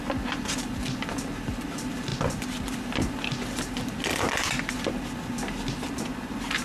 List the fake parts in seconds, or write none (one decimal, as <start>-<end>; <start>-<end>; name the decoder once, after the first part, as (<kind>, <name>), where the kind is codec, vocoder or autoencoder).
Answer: none